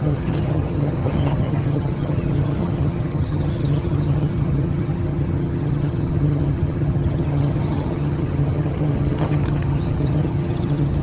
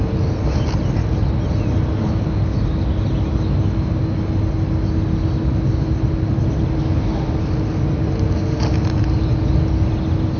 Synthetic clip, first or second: first